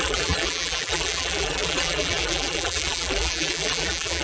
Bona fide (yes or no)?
no